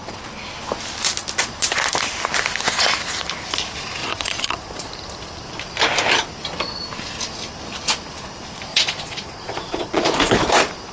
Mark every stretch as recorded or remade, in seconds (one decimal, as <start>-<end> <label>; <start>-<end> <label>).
0.0-4.0 recorded; 4.0-4.9 remade; 4.9-8.7 recorded; 8.7-10.3 remade; 10.3-10.9 recorded